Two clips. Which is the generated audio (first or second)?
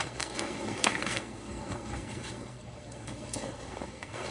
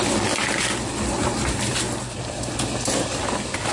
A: first